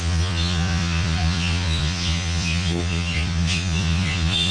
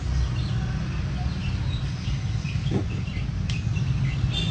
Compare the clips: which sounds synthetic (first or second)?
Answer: first